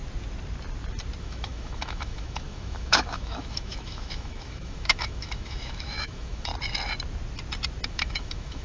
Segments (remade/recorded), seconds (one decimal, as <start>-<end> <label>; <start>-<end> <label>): 0.0-1.2 recorded; 1.2-6.5 remade; 6.5-7.9 recorded; 7.9-8.6 remade